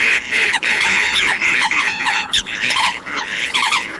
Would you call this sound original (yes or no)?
no